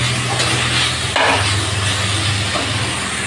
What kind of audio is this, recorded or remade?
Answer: recorded